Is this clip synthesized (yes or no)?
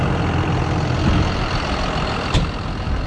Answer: no